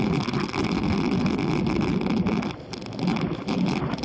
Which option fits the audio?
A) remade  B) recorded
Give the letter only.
B